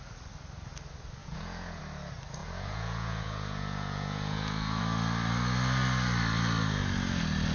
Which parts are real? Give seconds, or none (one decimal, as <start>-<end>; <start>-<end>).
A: 0.0-1.2; 1.8-2.4; 4.8-7.5